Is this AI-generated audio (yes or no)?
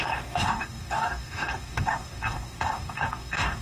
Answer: yes